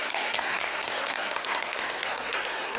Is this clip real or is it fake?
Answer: fake